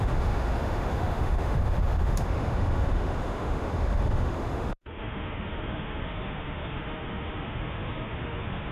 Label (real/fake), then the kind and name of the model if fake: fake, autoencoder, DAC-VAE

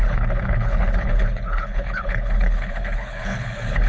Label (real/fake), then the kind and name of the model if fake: fake, codec, HILCodec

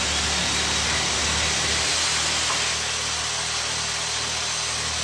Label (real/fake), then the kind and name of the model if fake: real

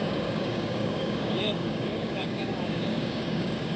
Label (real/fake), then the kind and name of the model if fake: fake, codec, DAC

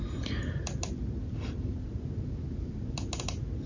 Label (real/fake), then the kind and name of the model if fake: real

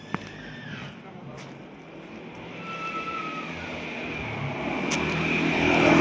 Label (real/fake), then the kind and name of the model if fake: real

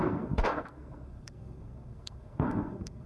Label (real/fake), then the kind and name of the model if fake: fake, codec, SNAC